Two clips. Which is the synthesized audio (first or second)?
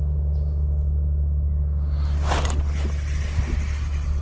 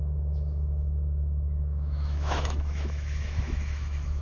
second